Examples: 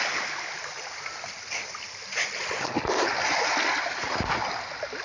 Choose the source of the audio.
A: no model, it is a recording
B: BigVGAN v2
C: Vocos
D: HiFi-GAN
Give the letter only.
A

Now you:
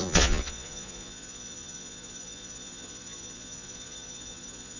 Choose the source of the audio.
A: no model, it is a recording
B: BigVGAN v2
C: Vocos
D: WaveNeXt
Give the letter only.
C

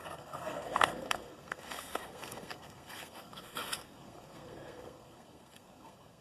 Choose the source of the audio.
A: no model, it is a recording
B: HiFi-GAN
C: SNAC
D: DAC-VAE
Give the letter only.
C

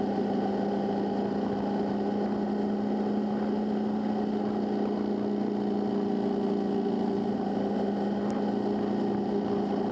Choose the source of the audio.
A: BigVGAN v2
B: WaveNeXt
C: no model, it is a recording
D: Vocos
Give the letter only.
C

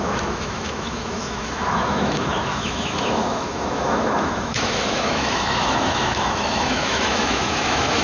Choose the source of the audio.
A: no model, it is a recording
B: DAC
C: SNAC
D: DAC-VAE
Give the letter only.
D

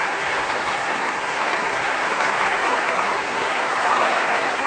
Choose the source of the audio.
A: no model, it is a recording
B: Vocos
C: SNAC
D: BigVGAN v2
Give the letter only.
C